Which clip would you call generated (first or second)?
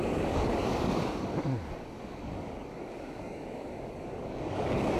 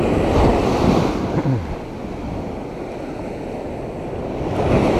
first